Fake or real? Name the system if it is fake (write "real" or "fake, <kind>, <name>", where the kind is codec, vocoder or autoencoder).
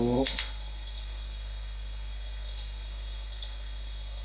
fake, codec, SNAC